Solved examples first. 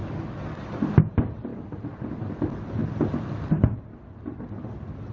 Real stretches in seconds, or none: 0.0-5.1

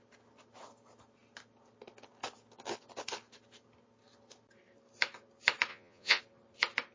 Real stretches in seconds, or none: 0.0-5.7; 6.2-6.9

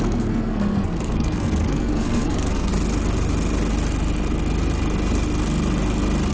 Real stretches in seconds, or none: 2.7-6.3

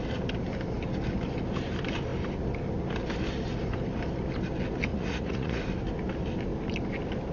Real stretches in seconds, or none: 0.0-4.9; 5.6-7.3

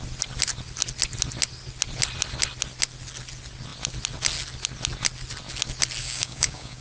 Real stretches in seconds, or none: 0.0-6.0

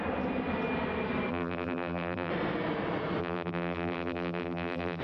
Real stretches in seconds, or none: 0.0-1.3; 2.3-3.2